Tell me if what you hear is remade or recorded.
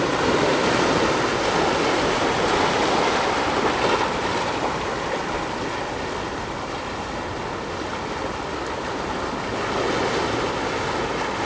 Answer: recorded